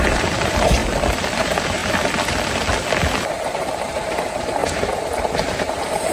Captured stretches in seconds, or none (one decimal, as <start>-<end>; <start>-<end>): 0.8-1.4; 1.8-3.3